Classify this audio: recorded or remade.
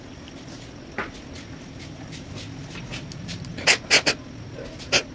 recorded